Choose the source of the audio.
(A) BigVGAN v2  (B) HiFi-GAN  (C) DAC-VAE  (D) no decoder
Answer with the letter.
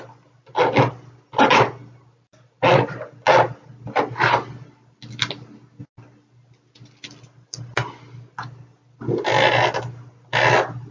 D